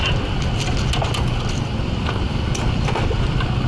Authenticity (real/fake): real